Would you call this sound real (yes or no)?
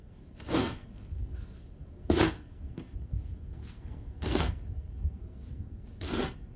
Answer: no